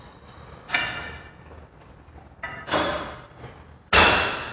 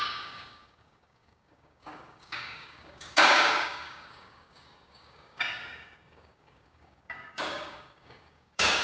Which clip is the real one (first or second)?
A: first